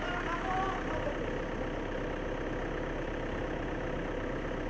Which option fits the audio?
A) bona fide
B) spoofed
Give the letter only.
A